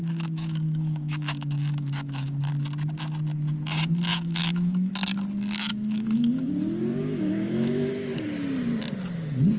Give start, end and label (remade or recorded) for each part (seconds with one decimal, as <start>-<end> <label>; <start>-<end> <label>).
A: 0.0-2.5 remade; 2.5-4.1 recorded; 4.1-4.9 remade; 4.9-5.7 recorded; 5.7-6.5 remade; 6.5-7.0 recorded; 7.0-7.9 remade; 7.9-9.6 recorded